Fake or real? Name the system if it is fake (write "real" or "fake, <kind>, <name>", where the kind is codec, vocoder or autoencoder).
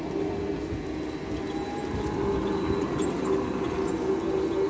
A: real